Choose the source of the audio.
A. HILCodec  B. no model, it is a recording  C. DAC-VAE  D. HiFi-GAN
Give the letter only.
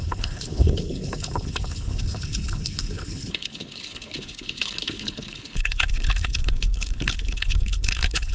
A